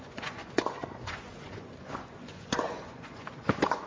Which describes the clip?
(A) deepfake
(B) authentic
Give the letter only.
A